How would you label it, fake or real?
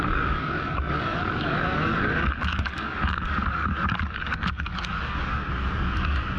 fake